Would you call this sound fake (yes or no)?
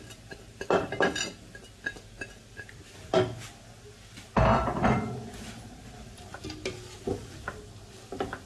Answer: no